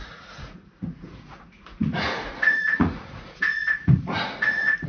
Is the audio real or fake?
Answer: fake